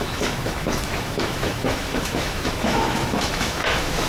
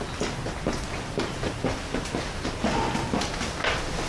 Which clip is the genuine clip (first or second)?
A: second